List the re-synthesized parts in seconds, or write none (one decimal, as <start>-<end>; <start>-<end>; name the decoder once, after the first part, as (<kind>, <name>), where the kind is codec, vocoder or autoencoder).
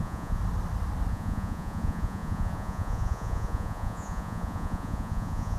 0.0-0.4 (vocoder, Vocos); 1.1-5.6